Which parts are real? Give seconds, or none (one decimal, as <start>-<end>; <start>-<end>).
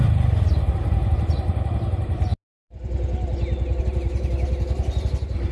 0.0-5.5